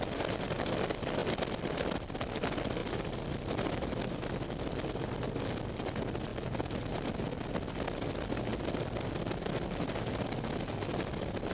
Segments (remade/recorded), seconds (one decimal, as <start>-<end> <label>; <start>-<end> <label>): 0.0-11.5 recorded